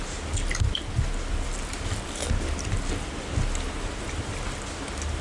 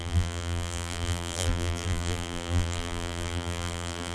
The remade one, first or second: second